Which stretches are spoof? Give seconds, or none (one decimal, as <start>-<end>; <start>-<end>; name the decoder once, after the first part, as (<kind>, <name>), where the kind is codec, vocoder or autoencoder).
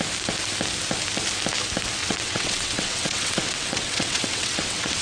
2.0-5.0 (vocoder, WaveNeXt)